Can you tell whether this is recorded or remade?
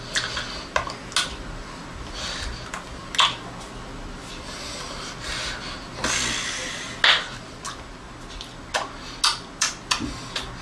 recorded